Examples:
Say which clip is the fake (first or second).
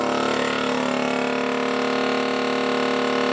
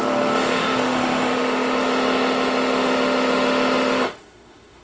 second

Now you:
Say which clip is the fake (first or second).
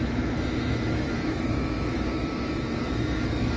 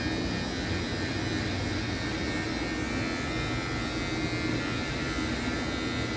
first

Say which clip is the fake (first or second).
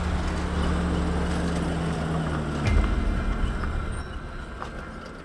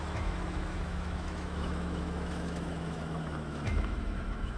second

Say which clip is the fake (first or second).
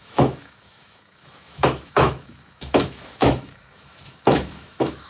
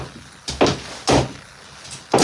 first